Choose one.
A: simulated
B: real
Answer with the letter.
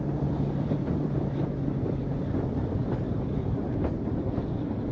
A